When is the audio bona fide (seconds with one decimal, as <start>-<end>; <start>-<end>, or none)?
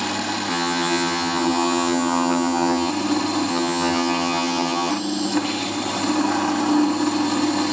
0.0-0.5; 2.9-3.5; 4.9-7.7